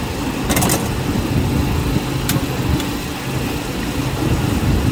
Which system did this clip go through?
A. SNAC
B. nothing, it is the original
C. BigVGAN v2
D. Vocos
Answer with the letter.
B